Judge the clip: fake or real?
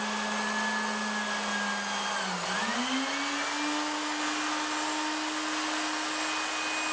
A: real